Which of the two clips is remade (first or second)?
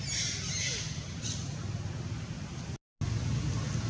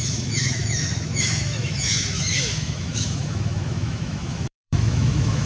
second